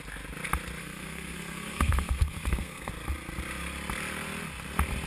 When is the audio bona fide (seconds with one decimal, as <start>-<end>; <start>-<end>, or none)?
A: 0.0-0.8; 2.9-5.1